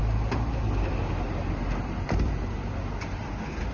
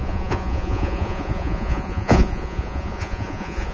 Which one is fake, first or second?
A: second